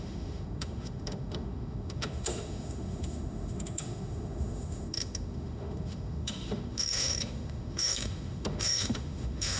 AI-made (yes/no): yes